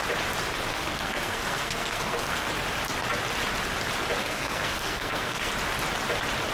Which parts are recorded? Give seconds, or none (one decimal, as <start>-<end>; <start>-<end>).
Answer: 0.0-0.7; 2.5-4.2; 5.5-6.5